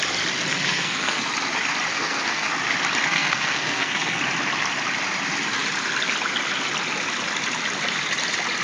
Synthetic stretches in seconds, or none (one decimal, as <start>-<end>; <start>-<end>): 0.5-1.2; 1.9-2.5; 3.0-4.2